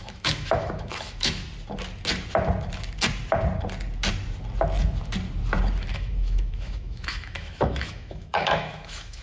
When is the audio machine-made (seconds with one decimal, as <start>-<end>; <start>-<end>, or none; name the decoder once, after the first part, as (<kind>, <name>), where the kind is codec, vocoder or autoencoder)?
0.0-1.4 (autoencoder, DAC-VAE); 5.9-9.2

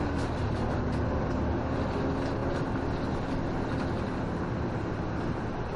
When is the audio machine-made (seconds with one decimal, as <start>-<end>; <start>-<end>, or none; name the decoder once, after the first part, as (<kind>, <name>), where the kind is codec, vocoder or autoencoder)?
none

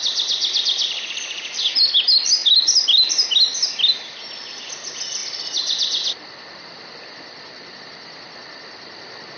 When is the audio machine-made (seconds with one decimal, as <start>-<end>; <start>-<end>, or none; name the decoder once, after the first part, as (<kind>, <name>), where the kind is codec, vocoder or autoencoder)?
none

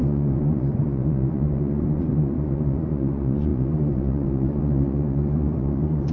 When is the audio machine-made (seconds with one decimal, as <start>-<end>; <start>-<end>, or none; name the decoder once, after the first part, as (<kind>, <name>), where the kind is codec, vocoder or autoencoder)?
0.0-6.1 (vocoder, Vocos)